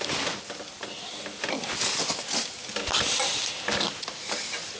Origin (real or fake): fake